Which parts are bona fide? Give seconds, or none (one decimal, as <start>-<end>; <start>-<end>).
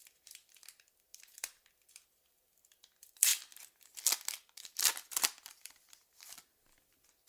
3.3-4.6